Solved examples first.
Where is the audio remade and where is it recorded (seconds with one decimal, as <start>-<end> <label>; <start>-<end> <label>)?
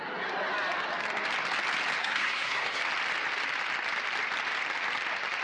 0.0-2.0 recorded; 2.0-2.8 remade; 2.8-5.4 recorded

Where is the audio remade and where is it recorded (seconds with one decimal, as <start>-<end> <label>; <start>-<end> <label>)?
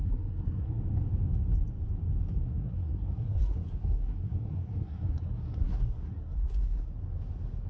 0.0-0.8 remade; 0.8-2.3 recorded; 2.3-6.9 remade; 6.9-7.7 recorded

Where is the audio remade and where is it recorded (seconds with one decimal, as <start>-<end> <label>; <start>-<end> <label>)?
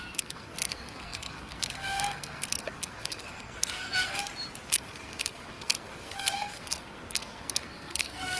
0.0-4.2 remade; 4.2-4.7 recorded; 4.7-8.4 remade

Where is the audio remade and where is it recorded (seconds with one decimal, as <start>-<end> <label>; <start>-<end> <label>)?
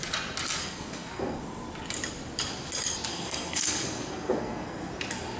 0.0-0.6 recorded; 0.6-1.4 remade; 1.4-3.1 recorded; 3.1-4.9 remade; 4.9-5.4 recorded